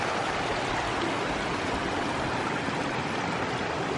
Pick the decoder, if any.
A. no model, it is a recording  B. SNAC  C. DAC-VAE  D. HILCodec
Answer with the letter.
A